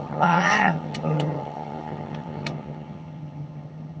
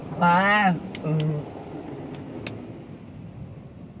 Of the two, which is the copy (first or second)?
first